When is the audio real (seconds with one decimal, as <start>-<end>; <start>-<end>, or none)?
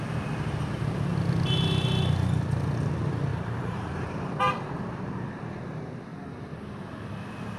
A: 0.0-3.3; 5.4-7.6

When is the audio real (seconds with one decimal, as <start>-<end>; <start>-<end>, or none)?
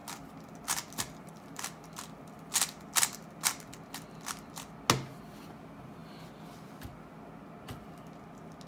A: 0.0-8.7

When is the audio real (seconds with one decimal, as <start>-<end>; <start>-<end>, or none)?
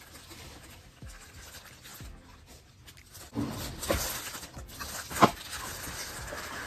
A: 0.0-6.7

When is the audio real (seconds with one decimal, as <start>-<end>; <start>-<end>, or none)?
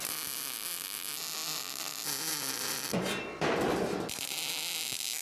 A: 0.0-1.4; 4.5-5.2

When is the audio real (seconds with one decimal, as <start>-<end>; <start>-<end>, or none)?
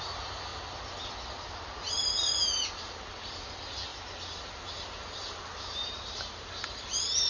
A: 0.0-3.9; 6.5-7.3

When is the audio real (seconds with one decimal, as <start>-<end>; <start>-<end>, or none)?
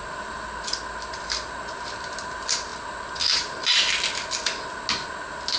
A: 0.0-5.6